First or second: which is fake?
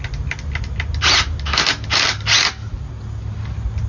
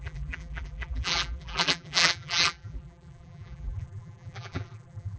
second